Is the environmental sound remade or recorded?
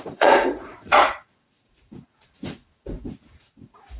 remade